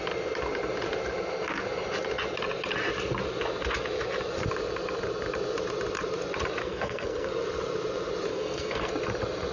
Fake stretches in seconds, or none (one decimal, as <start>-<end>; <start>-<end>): 6.6-7.3; 8.3-8.9